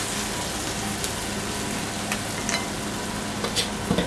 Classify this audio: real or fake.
real